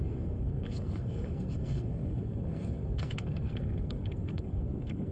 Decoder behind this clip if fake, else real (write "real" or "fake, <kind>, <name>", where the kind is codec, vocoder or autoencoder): fake, codec, SNAC